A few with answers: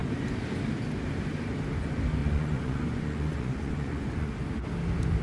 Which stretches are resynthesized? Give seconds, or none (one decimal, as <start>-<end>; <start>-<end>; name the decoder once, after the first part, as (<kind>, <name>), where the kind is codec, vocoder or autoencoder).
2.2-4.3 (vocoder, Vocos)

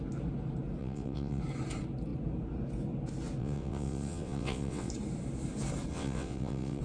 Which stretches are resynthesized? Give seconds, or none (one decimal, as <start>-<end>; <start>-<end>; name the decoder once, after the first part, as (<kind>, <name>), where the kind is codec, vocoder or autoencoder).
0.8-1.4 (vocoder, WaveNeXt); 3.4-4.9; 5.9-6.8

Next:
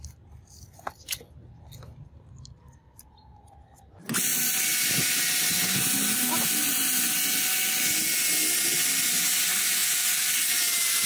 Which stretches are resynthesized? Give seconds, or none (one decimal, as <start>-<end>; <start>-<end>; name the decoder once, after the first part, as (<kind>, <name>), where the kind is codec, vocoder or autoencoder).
none

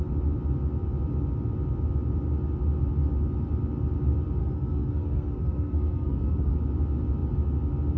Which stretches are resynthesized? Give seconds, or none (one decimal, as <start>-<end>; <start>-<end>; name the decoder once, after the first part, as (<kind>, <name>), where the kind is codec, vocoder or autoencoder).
4.4-6.5 (codec, SNAC)

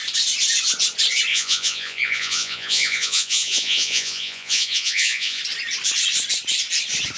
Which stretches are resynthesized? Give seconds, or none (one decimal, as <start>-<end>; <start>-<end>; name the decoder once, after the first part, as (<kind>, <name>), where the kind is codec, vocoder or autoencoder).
1.3-5.4 (vocoder, Vocos)